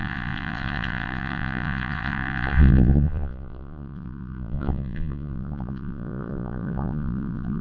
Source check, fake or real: fake